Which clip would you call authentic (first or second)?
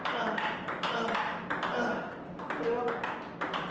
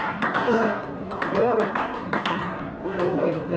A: first